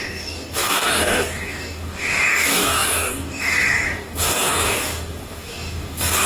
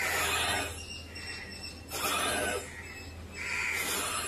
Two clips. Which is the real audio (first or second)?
second